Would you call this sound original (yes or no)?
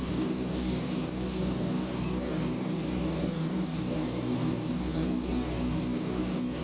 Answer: no